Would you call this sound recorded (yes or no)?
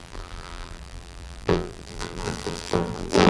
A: no